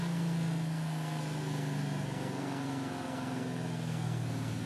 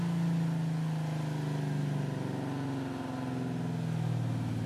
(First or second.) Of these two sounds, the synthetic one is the first